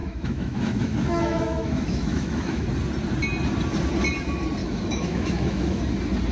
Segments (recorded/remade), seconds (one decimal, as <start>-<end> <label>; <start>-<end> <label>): 0.0-2.7 remade; 2.7-4.6 recorded; 4.6-5.8 remade; 5.8-6.3 recorded